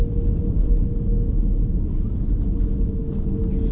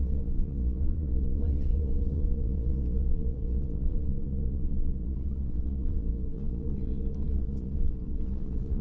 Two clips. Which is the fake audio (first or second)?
second